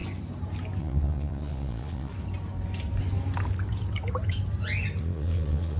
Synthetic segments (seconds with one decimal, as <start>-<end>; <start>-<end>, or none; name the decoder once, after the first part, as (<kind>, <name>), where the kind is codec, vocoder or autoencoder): 0.8-2.1 (vocoder, Vocos); 5.0-5.8